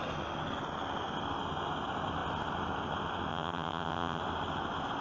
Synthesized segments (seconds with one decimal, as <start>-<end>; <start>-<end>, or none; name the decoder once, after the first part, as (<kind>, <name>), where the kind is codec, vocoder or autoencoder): 3.3-4.2 (vocoder, HiFi-GAN)